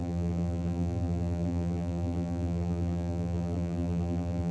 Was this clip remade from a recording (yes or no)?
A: yes